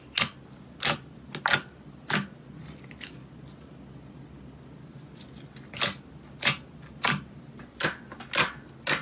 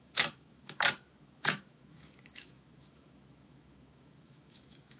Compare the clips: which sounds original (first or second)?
first